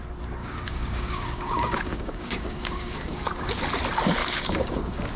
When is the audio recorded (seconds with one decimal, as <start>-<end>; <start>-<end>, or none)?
0.0-0.4; 3.5-4.2